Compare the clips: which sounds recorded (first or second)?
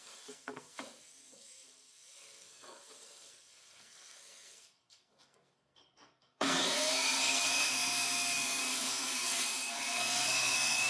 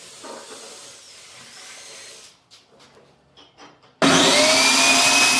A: second